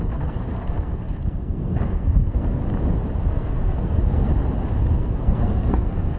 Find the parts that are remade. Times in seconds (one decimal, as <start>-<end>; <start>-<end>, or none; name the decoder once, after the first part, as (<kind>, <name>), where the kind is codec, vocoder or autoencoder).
0.0-2.6 (codec, SNAC); 3.3-4.3; 4.9-6.2